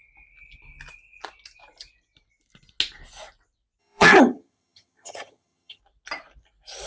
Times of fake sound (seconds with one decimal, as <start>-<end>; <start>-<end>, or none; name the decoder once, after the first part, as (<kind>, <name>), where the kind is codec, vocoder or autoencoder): 3.8-5.8 (vocoder, HiFi-GAN)